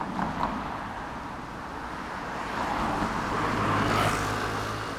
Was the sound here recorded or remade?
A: recorded